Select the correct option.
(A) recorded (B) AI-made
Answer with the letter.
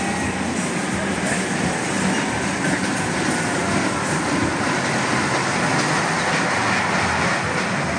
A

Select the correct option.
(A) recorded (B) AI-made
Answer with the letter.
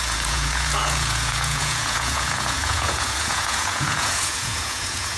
B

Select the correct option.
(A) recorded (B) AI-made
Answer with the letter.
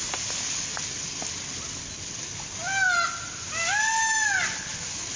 A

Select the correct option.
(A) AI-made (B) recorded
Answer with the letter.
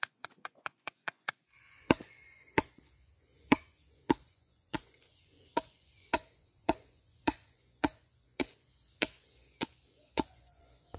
A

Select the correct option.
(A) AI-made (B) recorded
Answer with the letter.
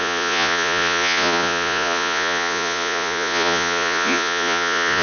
A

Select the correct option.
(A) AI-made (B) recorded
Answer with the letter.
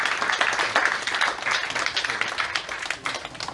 B